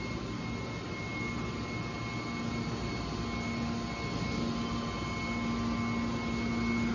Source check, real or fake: real